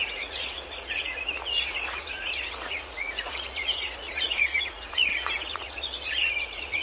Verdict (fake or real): fake